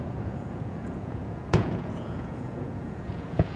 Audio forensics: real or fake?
fake